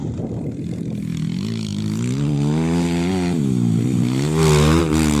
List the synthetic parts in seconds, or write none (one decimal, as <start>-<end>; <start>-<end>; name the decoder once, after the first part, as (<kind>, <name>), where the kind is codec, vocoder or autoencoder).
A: none